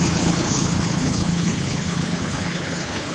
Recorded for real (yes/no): no